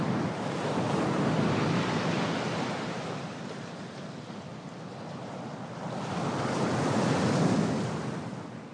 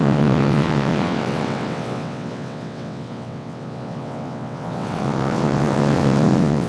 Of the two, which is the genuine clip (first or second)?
first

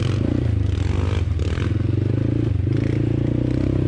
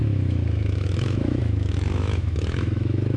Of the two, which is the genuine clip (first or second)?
first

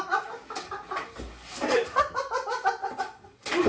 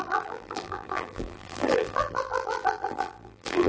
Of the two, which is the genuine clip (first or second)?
first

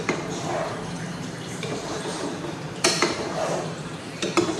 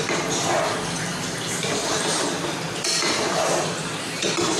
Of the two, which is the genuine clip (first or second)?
second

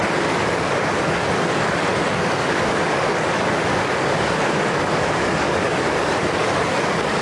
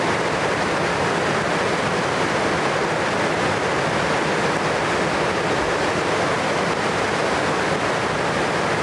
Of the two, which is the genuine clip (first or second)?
second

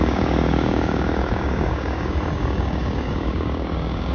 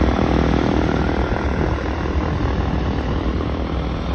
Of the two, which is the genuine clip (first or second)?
second